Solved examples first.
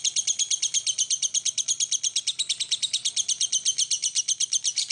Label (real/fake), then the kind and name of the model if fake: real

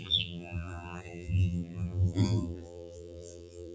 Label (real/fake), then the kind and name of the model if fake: fake, vocoder, BigVGAN v2